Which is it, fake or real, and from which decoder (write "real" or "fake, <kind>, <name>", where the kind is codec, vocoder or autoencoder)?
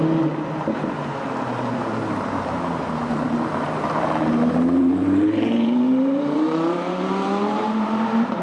fake, vocoder, BigVGAN v2